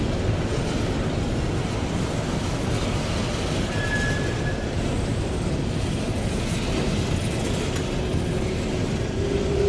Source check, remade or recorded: recorded